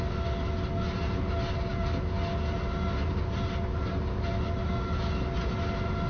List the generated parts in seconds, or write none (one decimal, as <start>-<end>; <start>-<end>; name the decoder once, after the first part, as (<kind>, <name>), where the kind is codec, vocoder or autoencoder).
none